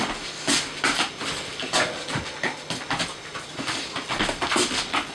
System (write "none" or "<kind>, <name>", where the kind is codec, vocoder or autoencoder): none